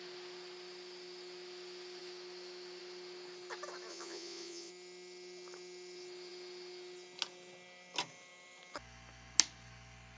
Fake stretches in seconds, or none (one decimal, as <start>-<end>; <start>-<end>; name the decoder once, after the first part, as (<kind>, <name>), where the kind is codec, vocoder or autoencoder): 3.9-4.7 (vocoder, Vocos)